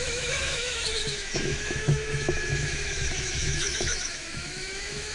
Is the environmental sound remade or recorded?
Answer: remade